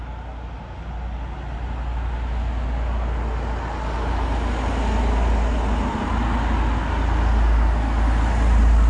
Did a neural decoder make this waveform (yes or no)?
no